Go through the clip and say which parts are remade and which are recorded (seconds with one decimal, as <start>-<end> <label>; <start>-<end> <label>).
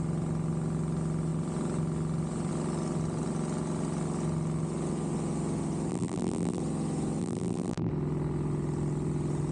0.0-5.9 recorded; 5.9-6.6 remade; 6.6-7.2 recorded; 7.2-7.9 remade; 7.9-9.5 recorded